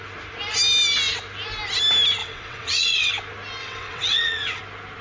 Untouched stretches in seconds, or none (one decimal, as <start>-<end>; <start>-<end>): 0.0-2.2; 3.1-3.6; 4.6-5.0